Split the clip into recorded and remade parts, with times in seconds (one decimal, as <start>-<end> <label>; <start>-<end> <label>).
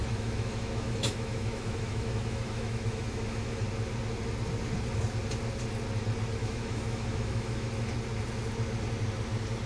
0.0-3.6 remade; 3.6-6.4 recorded; 6.4-7.7 remade; 7.7-9.7 recorded